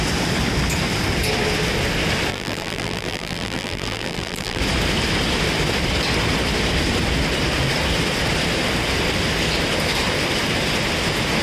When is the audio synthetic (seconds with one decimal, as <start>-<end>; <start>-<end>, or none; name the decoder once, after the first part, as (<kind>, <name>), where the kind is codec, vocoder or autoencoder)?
2.3-4.6 (vocoder, BigVGAN v2)